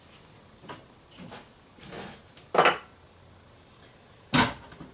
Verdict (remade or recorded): recorded